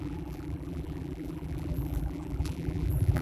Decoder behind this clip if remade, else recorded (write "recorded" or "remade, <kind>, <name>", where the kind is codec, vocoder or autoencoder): remade, vocoder, BigVGAN v2